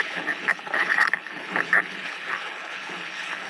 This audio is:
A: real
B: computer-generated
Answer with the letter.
B